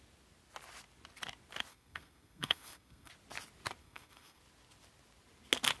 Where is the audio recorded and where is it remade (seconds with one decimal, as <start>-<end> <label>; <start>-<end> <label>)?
0.0-1.7 recorded; 1.7-3.1 remade; 3.1-3.8 recorded; 3.8-4.4 remade; 4.4-5.8 recorded